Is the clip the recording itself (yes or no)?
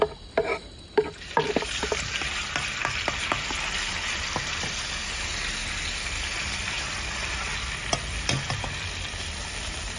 yes